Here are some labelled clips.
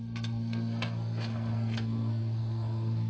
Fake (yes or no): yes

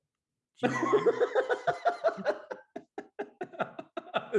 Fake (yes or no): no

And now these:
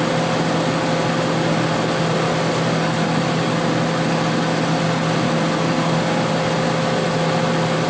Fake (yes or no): no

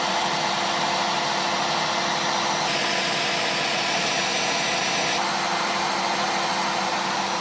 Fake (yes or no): no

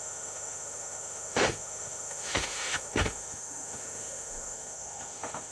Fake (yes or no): yes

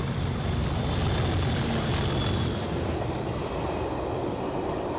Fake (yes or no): no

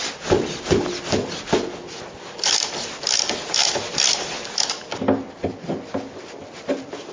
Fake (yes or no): no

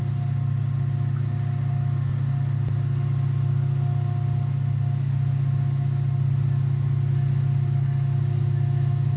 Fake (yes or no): no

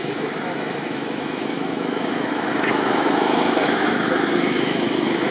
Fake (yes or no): yes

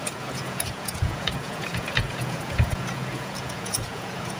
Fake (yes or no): yes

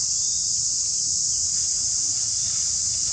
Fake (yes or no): no